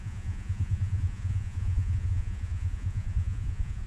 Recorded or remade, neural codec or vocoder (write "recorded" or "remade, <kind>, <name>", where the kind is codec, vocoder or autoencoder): remade, vocoder, Vocos